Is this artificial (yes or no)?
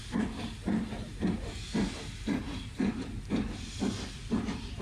no